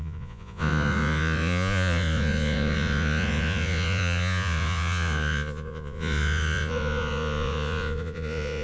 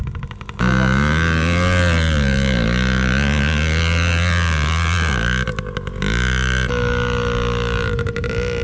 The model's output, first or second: first